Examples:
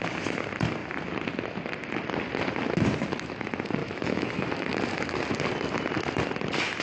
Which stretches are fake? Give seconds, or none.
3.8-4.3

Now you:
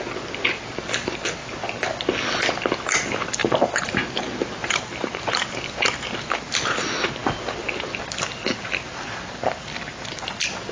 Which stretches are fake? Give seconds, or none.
3.4-4.0; 4.6-6.5

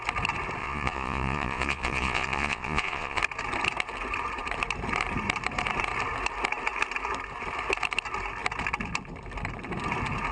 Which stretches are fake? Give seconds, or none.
0.6-3.2

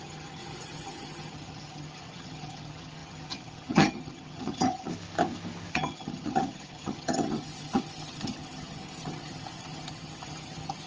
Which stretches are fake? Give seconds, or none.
0.0-4.9; 5.7-10.9

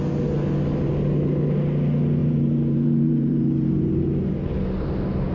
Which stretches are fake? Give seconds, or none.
2.2-4.3

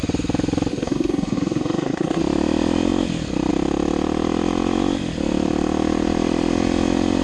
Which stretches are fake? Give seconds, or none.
0.7-2.2